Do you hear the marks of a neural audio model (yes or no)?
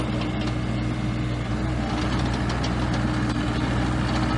no